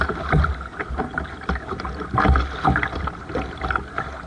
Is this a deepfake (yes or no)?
no